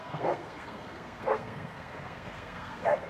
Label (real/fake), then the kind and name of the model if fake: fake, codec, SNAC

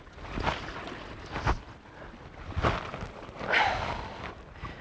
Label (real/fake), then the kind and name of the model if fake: real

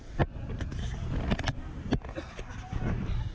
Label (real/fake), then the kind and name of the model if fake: real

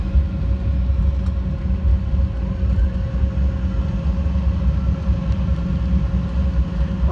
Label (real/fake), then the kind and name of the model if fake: real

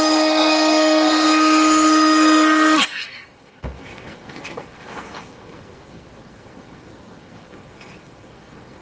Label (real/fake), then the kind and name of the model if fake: fake, codec, SNAC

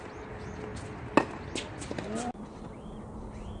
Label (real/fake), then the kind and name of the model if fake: real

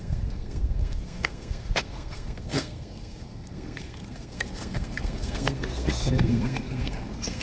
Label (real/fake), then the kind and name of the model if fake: fake, codec, SNAC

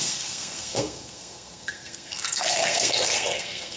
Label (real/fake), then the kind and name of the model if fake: fake, codec, SNAC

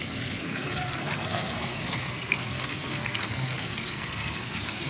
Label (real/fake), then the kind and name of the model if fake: fake, codec, SNAC